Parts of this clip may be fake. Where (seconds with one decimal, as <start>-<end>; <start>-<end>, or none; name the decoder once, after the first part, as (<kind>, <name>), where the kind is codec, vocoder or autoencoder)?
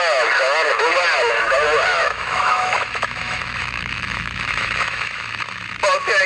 1.9-5.7 (autoencoder, DAC-VAE)